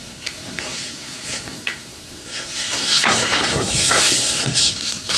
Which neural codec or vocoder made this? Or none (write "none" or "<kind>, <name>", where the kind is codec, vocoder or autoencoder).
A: codec, SNAC